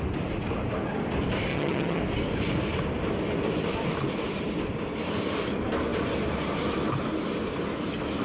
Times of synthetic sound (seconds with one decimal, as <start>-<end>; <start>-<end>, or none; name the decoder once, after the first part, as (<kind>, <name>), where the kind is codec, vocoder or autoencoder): 1.5-2.0 (vocoder, HiFi-GAN)